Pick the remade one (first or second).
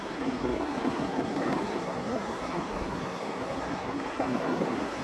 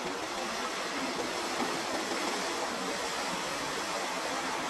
first